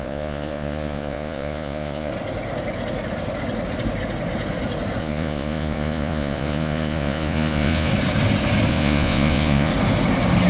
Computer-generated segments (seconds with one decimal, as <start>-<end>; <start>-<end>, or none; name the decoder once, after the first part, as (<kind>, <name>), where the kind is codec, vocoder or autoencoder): 0.0-2.1 (vocoder, Vocos); 5.0-7.9; 8.7-9.7